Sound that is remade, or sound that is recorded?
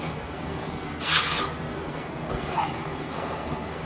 remade